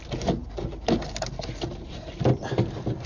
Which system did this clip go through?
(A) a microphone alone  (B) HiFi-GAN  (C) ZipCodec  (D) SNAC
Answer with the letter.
A